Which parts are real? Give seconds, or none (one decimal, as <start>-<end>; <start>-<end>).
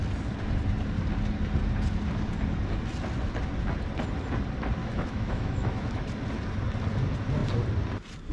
0.0-4.8; 6.0-8.3